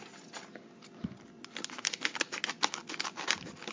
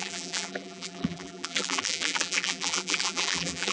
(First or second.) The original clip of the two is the first